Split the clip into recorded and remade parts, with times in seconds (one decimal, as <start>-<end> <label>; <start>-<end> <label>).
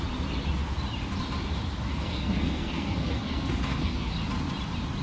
0.0-1.9 recorded; 1.9-4.1 remade; 4.1-5.0 recorded